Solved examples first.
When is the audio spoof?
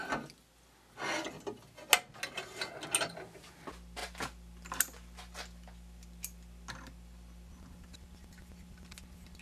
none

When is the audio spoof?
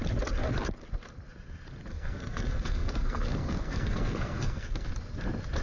1.9-4.9 (codec, SNAC)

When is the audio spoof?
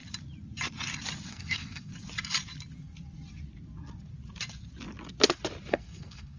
1.3-1.9 (codec, SNAC); 5.7-6.4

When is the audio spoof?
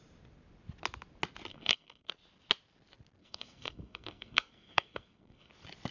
1.5-2.1 (codec, SNAC); 3.2-5.5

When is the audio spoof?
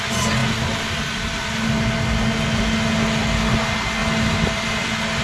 none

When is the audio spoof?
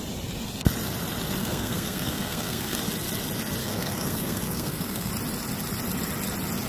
1.4-2.8 (codec, SNAC); 3.6-5.1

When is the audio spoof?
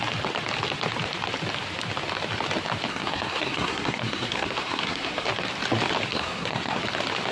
2.9-5.3 (codec, SNAC); 6.1-6.8